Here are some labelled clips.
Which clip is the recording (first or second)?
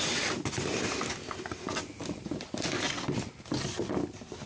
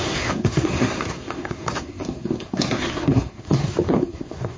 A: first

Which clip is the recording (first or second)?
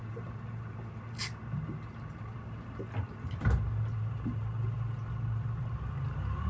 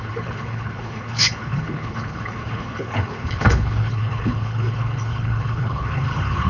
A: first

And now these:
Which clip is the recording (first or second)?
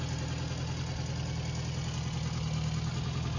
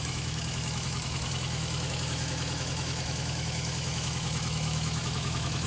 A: first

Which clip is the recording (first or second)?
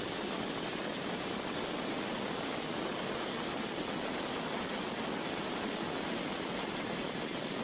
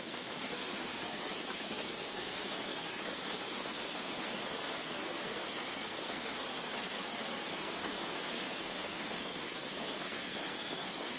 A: first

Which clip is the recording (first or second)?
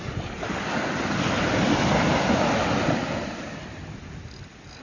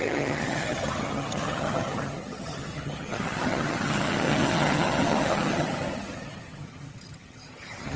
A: first